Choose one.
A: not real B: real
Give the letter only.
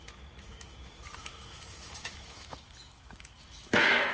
A